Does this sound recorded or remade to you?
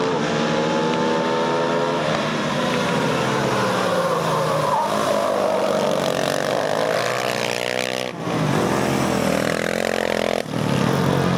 recorded